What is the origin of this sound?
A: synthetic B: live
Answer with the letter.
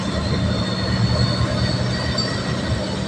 B